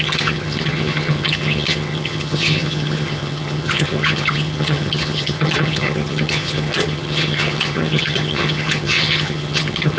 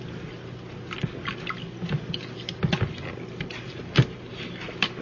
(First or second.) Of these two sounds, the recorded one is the second